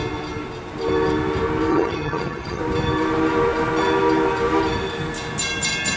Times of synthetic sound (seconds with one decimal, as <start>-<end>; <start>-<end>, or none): 1.7-2.6